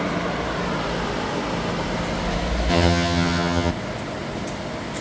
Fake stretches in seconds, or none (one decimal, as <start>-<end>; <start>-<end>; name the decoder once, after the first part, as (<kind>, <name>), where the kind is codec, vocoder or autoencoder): 2.7-3.7 (vocoder, HiFi-GAN)